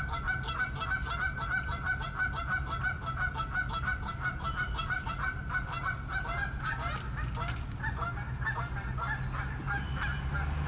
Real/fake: real